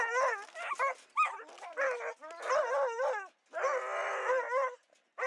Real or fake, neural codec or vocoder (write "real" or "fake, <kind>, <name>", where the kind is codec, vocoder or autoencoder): real